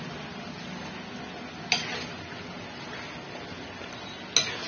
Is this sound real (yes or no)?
yes